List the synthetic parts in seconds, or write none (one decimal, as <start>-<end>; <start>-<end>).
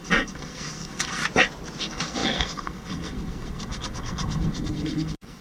0.0-1.2; 1.8-5.4